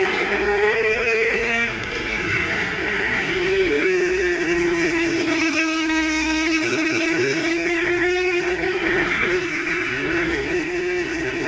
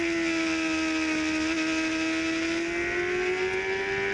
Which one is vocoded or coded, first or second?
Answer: first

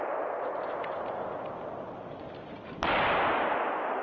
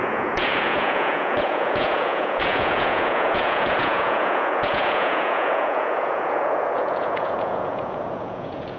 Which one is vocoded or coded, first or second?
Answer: second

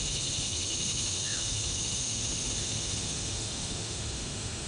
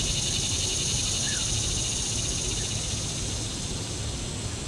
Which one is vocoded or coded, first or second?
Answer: first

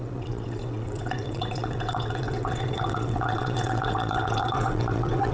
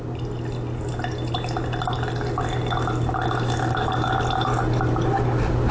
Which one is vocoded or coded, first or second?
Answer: first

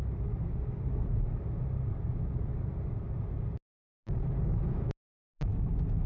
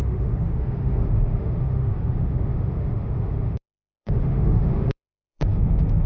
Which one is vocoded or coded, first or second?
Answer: second